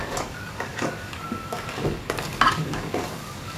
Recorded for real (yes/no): no